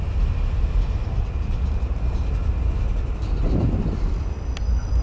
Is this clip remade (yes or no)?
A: no